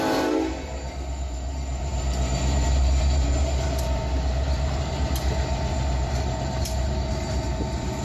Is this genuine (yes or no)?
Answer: no